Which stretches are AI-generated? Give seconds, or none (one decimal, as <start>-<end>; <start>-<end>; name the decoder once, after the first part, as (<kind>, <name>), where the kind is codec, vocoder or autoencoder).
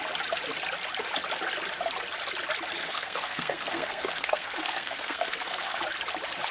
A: 2.8-5.8 (codec, SNAC)